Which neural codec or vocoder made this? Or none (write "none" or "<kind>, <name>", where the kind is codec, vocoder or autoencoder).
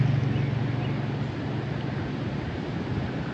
none